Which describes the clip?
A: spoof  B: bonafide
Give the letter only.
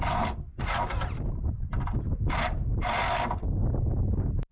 B